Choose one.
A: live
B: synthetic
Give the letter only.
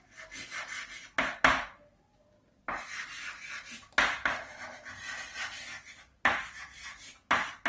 A